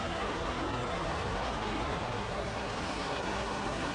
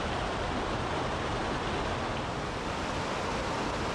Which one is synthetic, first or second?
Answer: first